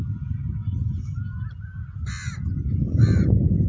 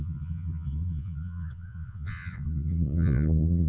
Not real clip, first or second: second